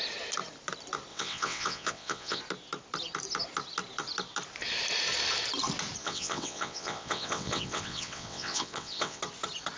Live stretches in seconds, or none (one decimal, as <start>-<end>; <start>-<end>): 0.0-1.1; 2.4-6.0; 9.2-9.8